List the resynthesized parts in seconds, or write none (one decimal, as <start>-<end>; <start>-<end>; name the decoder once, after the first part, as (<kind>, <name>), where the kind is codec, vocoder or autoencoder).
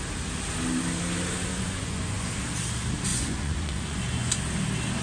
1.5-2.3 (vocoder, Vocos); 3.1-4.4